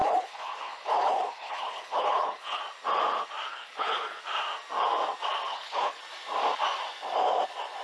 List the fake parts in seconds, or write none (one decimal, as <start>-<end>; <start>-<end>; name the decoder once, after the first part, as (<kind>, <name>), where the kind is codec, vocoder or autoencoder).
0.0-2.6 (codec, HILCodec); 3.5-4.2; 5.5-6.0